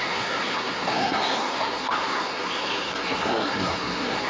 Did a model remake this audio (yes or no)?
yes